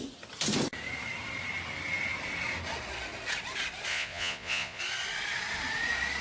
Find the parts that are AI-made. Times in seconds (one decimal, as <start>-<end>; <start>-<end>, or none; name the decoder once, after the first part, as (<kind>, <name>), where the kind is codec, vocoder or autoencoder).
3.9-4.8 (vocoder, Vocos)